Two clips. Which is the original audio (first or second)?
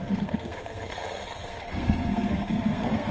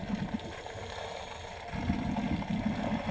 second